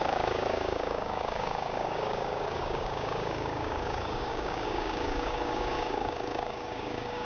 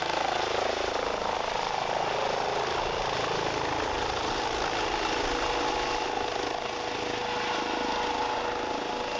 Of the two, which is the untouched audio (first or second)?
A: second